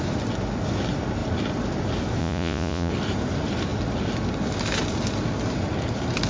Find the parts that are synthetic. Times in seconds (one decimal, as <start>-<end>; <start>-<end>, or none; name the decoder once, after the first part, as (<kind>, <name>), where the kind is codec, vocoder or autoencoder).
2.2-2.9 (vocoder, Vocos)